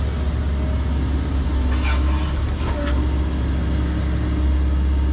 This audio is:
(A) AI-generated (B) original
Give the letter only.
B